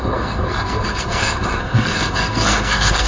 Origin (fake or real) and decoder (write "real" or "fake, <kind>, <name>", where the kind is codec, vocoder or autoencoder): fake, codec, SNAC